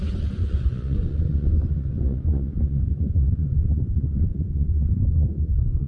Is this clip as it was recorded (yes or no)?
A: no